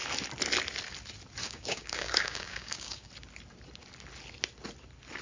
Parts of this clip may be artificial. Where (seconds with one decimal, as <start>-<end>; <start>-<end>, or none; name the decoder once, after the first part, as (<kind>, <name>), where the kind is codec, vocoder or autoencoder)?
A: 1.4-3.1 (codec, DAC)